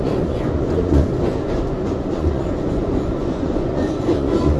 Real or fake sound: fake